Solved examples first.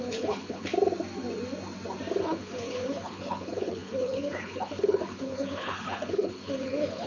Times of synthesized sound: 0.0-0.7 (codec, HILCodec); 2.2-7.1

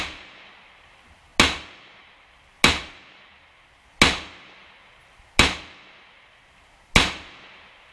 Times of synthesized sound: none